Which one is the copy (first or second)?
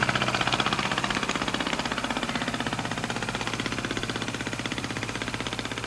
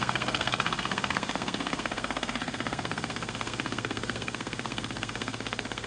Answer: second